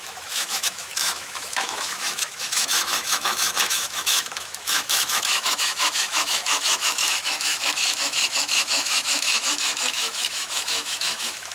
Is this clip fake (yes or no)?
yes